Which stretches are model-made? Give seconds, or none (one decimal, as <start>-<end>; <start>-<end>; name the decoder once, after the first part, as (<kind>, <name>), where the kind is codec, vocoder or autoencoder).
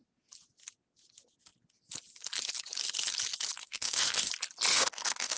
3.6-4.3 (autoencoder, DAC-VAE); 4.7-5.4